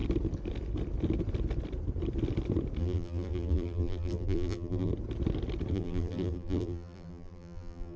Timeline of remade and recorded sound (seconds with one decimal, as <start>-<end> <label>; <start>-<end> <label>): 0.0-2.8 recorded; 2.8-4.9 remade; 4.9-5.7 recorded; 5.7-8.0 remade

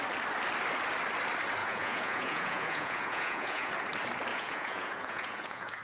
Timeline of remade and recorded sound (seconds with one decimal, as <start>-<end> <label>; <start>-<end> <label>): 0.0-1.6 recorded; 1.6-3.7 remade; 3.7-4.3 recorded; 4.3-5.8 remade

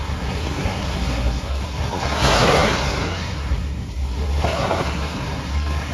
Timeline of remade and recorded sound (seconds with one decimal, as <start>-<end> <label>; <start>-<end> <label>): 0.0-5.9 remade

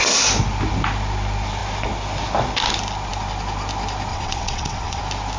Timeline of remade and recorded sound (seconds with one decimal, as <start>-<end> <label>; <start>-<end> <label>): 0.0-4.1 recorded; 4.1-5.0 remade; 5.0-5.4 recorded

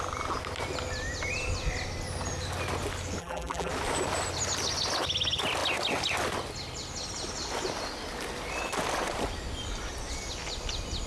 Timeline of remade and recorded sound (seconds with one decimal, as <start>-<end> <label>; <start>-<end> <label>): 0.0-3.2 recorded; 3.2-3.7 remade; 3.7-11.1 recorded